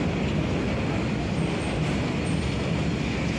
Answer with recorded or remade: recorded